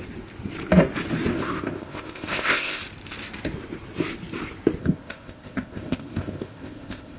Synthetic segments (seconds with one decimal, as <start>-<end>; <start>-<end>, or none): 1.3-2.8; 4.8-7.2